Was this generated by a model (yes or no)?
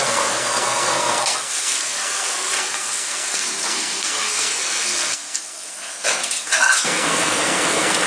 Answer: yes